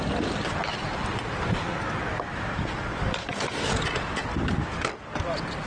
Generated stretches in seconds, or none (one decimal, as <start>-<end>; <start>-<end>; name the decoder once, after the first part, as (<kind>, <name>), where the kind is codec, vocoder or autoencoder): none